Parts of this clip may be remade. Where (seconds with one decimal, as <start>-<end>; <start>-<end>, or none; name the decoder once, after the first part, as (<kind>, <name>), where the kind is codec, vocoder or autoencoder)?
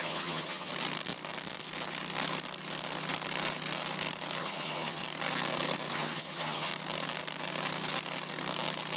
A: 0.0-0.7 (vocoder, HiFi-GAN); 4.4-5.0; 5.9-6.7